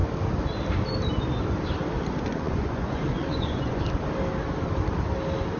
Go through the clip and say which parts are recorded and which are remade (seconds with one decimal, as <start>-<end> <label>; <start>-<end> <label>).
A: 0.0-2.3 recorded; 2.3-3.8 remade; 3.8-5.6 recorded